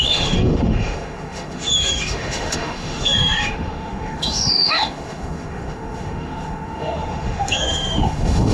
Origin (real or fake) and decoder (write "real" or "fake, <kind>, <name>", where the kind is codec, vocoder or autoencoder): fake, autoencoder, DAC-VAE